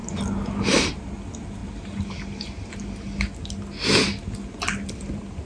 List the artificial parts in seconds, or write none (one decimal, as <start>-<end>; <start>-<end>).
none